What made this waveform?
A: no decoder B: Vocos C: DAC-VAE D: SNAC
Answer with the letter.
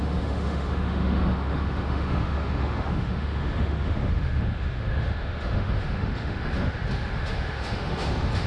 C